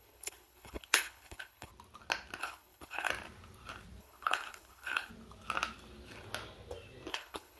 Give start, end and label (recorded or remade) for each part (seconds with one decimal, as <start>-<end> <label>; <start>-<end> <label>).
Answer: 0.0-1.7 remade; 1.7-2.4 recorded; 2.4-3.1 remade; 3.1-4.0 recorded; 4.0-5.1 remade; 5.1-7.1 recorded; 7.1-7.6 remade